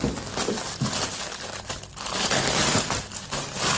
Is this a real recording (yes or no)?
yes